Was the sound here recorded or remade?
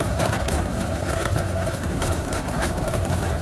remade